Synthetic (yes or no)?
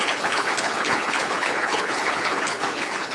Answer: yes